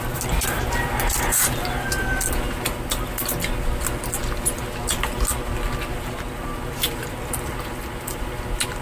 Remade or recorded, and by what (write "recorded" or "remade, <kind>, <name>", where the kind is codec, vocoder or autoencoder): recorded